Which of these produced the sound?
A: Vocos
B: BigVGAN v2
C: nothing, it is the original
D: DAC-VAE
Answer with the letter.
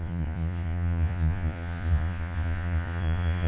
A